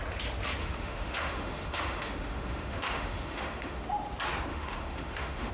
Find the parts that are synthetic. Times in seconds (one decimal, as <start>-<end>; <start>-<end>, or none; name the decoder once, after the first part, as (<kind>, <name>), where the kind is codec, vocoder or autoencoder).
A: 0.6-3.9 (autoencoder, DAC-VAE); 4.5-5.5